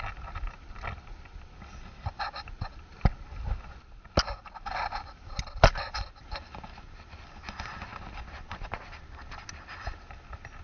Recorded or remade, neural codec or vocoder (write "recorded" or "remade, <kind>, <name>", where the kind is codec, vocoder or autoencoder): recorded